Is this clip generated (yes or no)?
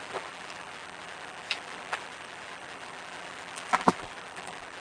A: yes